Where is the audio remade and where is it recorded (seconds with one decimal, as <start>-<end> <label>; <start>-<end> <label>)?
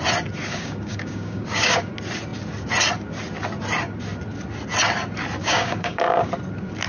0.0-0.5 recorded; 0.5-1.9 remade; 1.9-5.4 recorded; 5.4-6.3 remade; 6.3-6.9 recorded